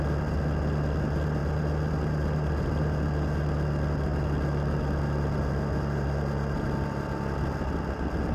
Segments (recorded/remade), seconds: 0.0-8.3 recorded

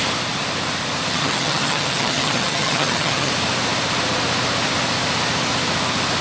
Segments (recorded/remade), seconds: 0.0-1.1 recorded; 1.1-3.3 remade; 3.3-6.2 recorded

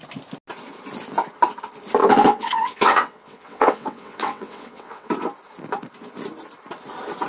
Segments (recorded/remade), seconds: 0.0-2.0 recorded; 2.0-5.1 remade; 5.1-7.3 recorded